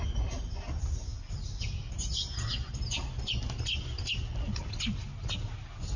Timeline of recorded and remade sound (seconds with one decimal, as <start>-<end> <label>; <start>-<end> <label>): 0.0-6.0 recorded